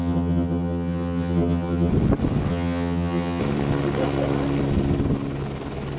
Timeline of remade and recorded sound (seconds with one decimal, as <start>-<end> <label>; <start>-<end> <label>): 0.0-1.9 remade; 1.9-2.5 recorded; 2.5-3.4 remade; 3.4-6.0 recorded